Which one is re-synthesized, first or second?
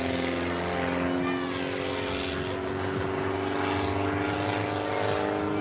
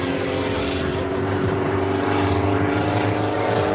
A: second